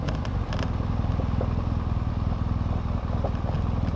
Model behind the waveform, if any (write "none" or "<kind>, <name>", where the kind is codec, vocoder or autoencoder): none